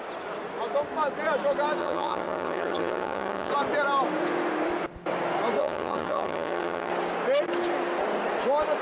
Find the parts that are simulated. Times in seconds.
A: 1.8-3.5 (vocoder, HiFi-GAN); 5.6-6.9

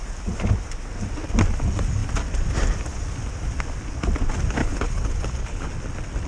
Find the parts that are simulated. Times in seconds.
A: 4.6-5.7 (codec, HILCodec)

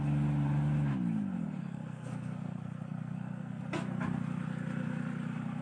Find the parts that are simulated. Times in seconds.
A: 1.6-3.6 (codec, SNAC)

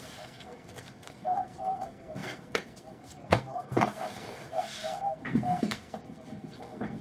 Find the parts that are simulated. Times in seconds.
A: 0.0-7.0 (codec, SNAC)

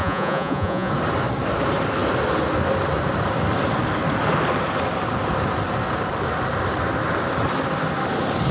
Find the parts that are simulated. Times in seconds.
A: 0.0-0.9 (vocoder, Vocos)

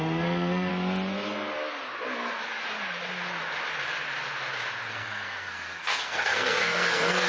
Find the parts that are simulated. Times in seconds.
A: 0.0-0.7 (codec, SNAC); 4.9-7.3